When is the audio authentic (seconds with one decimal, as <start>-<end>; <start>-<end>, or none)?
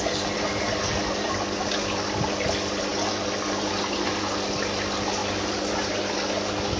0.0-6.8